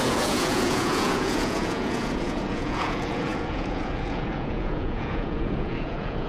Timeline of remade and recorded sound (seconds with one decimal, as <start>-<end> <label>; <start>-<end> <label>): 0.0-6.3 remade